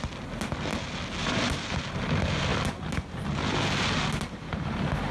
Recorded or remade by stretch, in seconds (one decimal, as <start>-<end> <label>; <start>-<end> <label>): 0.0-5.1 recorded